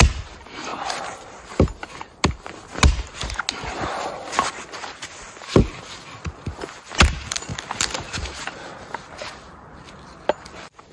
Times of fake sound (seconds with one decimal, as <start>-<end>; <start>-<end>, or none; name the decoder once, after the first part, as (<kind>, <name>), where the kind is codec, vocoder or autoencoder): none